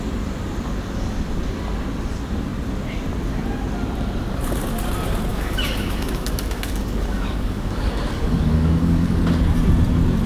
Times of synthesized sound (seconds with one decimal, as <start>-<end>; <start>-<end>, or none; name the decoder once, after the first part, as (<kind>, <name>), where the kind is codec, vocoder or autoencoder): 5.3-9.2 (codec, DAC)